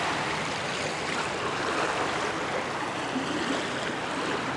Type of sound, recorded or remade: remade